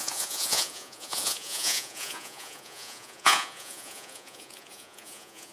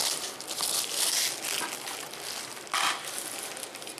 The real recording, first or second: second